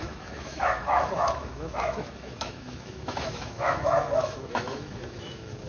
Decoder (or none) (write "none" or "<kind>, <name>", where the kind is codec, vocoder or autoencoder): autoencoder, DAC-VAE